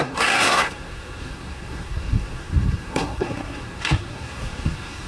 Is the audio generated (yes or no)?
yes